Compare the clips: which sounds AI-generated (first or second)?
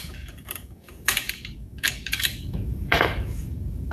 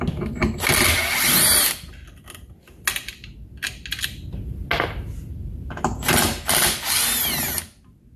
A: first